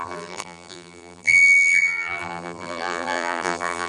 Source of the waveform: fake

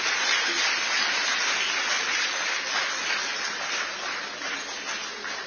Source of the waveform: real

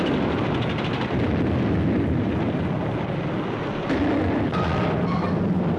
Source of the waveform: real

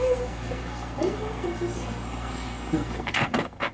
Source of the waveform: fake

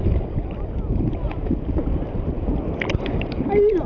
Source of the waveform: real